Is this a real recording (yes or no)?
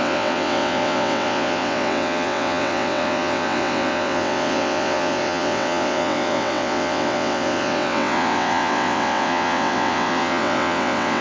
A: no